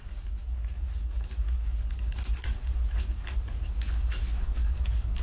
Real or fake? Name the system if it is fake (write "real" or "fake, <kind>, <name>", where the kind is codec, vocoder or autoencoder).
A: fake, codec, DAC